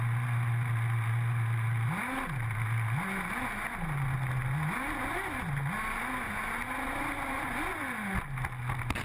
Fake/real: real